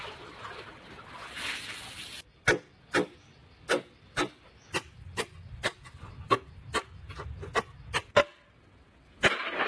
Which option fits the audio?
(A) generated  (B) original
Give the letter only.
B